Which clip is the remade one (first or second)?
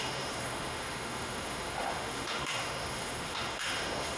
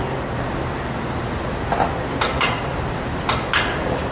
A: first